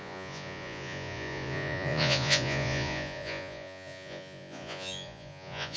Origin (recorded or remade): remade